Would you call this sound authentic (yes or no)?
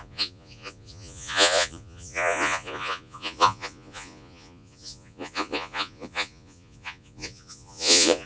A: no